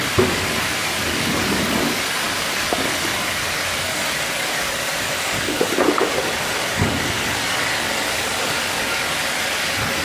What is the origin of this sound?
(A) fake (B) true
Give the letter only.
A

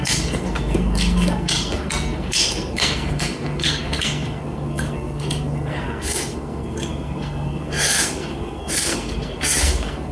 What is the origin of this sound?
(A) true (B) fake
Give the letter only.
B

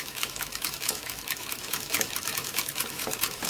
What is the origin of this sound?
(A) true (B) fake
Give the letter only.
B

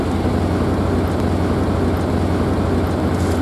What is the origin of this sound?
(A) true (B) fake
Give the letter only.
A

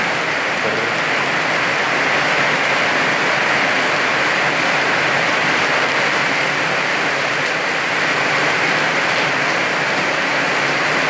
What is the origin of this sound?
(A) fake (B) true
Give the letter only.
B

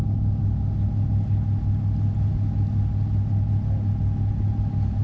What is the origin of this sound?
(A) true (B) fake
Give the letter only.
A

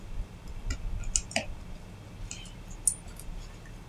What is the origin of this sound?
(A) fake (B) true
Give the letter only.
B